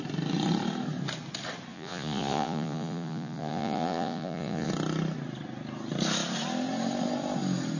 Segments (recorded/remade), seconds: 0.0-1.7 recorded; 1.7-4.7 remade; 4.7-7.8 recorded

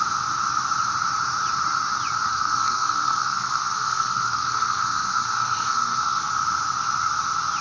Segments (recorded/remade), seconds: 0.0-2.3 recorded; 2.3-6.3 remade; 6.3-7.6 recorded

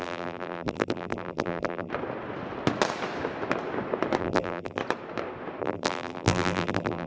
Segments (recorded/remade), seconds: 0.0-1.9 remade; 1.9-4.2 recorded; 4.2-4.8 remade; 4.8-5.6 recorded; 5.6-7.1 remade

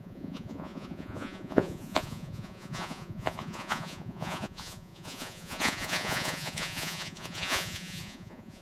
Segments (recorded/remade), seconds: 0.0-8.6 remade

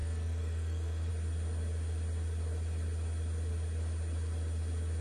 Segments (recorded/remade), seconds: 0.0-1.1 remade; 1.1-5.0 recorded

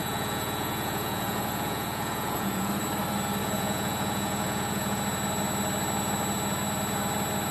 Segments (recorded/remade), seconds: 0.0-2.7 remade; 2.7-3.4 recorded; 3.4-5.0 remade; 5.0-7.5 recorded

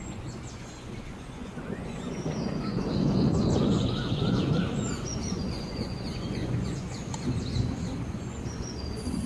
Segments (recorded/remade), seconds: 0.0-9.3 remade

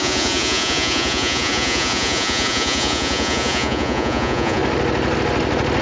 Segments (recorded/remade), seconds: 0.0-4.6 remade; 4.6-5.8 recorded